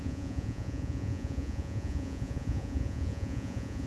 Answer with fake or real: fake